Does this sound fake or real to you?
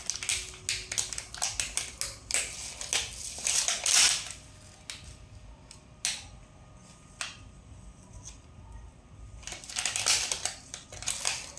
real